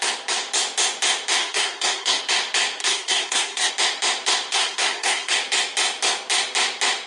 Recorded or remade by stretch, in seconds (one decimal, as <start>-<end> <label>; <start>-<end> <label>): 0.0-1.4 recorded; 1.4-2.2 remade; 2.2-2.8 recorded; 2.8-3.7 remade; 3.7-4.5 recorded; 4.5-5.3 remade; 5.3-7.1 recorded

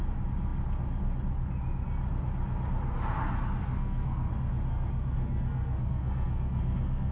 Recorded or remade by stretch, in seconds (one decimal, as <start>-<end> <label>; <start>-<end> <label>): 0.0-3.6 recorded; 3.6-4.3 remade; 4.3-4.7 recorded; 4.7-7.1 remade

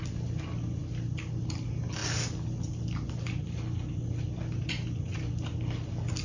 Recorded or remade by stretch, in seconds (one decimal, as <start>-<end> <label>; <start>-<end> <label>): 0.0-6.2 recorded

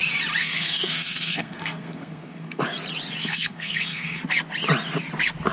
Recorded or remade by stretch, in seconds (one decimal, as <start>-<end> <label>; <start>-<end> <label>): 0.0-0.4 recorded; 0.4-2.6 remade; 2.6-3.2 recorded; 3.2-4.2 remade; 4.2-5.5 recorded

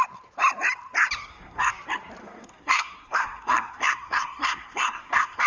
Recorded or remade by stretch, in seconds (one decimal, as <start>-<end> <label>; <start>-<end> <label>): 0.0-1.2 recorded; 1.2-1.7 remade; 1.7-2.2 recorded; 2.2-5.5 remade

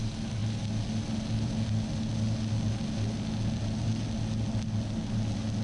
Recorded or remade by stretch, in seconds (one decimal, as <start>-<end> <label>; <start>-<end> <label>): 0.0-5.6 recorded

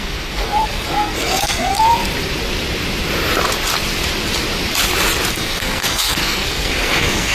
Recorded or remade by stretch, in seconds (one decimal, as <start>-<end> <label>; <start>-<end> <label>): 0.0-2.0 remade; 2.0-5.3 recorded; 5.3-7.3 remade

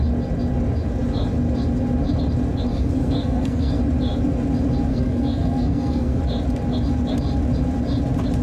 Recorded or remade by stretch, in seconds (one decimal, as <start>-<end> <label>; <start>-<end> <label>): 0.0-2.7 recorded; 2.7-3.8 remade; 3.8-4.9 recorded; 4.9-6.2 remade; 6.2-8.4 recorded